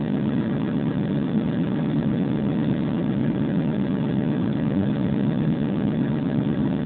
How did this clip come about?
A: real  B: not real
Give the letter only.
B